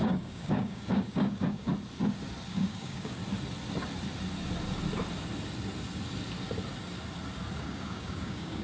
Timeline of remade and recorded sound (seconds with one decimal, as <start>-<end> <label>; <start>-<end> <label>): 0.0-1.7 remade; 1.7-2.5 recorded; 2.5-3.2 remade; 3.2-7.6 recorded; 7.6-8.6 remade